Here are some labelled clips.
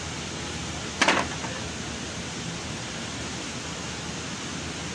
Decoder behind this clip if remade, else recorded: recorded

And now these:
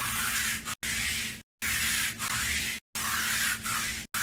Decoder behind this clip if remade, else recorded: recorded